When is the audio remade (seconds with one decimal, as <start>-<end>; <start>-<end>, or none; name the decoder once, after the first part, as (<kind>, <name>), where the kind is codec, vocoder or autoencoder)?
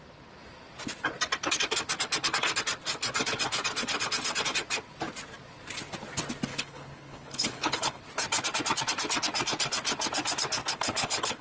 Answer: 6.5-8.0 (codec, HILCodec); 10.6-11.4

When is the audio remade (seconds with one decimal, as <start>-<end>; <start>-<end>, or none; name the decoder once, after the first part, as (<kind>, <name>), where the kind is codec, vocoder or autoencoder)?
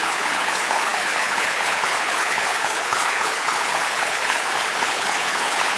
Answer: 0.0-5.8 (codec, HILCodec)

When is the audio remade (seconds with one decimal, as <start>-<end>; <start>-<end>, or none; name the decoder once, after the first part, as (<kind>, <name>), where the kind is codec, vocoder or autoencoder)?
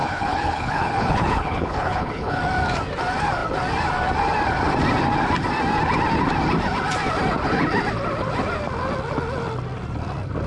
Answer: 0.0-2.4 (codec, HILCodec)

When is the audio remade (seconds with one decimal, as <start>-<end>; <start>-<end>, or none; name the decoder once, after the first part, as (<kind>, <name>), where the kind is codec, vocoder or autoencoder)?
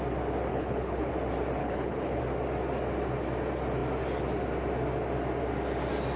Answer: 0.5-1.1 (codec, HILCodec); 1.6-2.2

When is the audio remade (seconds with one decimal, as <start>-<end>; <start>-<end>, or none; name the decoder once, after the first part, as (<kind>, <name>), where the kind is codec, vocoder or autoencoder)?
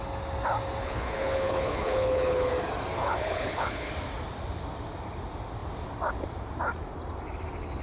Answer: 0.8-2.5 (codec, HILCodec); 3.0-3.9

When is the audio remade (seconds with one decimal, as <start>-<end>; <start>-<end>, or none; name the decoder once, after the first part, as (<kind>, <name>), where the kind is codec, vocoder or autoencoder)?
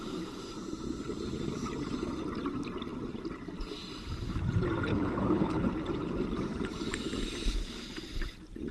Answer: 4.9-5.7 (codec, HILCodec)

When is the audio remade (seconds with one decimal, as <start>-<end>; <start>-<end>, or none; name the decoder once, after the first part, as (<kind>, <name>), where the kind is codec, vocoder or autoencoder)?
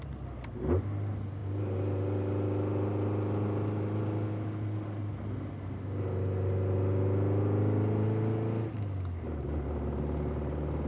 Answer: none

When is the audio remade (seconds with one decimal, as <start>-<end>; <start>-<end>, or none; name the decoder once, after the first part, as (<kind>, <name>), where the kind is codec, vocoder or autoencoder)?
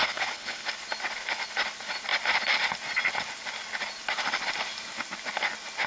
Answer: 0.0-0.7 (codec, HILCodec)